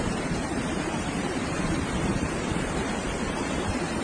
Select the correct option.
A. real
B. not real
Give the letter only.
B